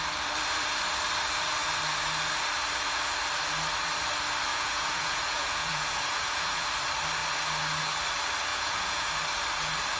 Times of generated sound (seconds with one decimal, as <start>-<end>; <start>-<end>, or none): 4.5-6.7; 8.5-9.1